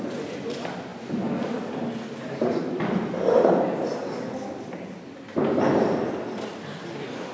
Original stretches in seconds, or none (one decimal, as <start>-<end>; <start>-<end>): 0.0-7.3

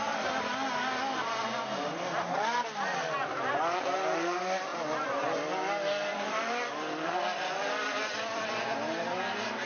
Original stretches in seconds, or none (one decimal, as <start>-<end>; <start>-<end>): 0.0-4.7; 9.1-9.7